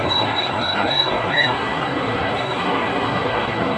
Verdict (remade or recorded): remade